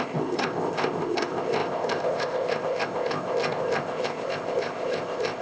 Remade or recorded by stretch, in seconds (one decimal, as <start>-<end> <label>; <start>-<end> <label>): 0.0-5.4 remade

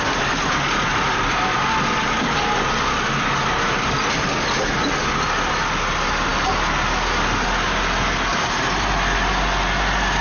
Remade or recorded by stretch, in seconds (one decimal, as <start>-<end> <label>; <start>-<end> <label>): 0.0-10.2 recorded

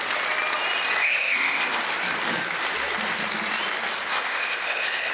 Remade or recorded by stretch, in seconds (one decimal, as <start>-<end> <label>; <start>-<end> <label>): 0.0-1.0 recorded; 1.0-1.8 remade; 1.8-4.1 recorded; 4.1-5.1 remade

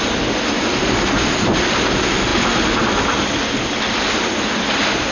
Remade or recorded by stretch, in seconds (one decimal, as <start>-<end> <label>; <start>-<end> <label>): 0.0-5.1 recorded

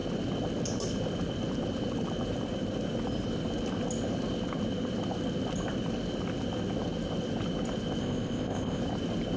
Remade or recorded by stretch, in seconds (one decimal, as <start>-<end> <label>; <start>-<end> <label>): 0.0-8.0 recorded; 8.0-8.8 remade; 8.8-9.4 recorded

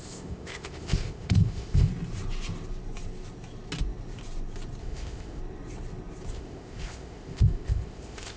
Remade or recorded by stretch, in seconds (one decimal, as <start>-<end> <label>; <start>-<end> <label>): 0.0-1.9 remade; 1.9-4.8 recorded; 4.8-5.4 remade; 5.4-6.3 recorded; 6.3-8.4 remade

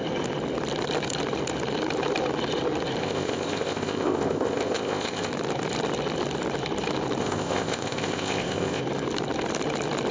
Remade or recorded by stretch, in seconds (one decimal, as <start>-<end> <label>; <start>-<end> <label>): 0.0-3.0 recorded; 3.0-5.3 remade; 5.3-7.2 recorded; 7.2-8.8 remade; 8.8-10.1 recorded